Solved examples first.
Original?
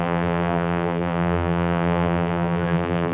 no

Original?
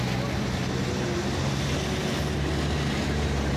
yes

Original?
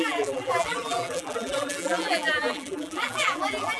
no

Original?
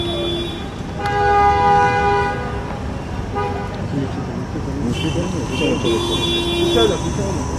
yes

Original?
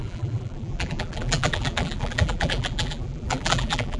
no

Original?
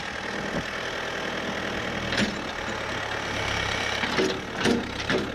yes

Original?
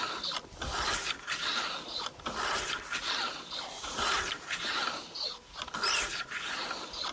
yes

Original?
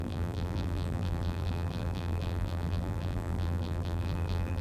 no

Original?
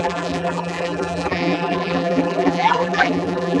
no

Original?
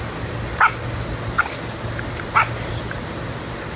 yes